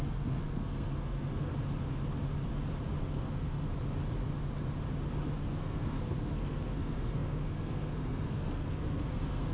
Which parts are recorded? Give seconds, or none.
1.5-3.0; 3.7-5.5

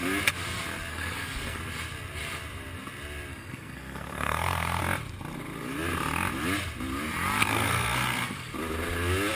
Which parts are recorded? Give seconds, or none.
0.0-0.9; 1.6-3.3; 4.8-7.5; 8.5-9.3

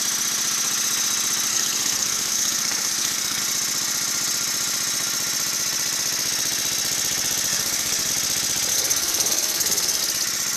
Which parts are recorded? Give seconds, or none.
0.0-1.5; 3.4-7.5; 8.1-8.7; 10.0-10.6

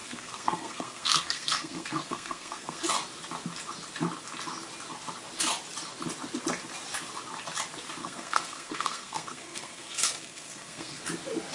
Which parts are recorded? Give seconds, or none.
2.8-8.0; 11.0-11.5

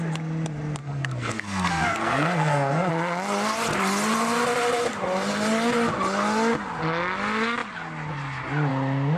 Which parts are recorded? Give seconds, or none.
0.0-0.8; 2.9-9.2

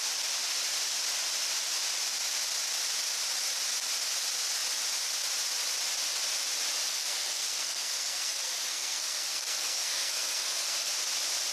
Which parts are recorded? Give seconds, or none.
0.0-6.9; 10.9-11.5

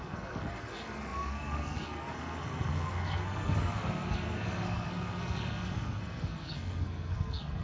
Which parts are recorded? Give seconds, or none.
none